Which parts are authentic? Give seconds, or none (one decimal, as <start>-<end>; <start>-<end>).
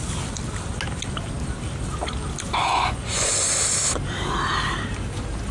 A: 0.0-2.7; 3.3-5.5